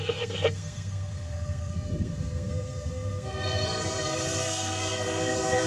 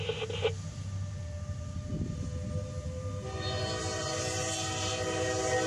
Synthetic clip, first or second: first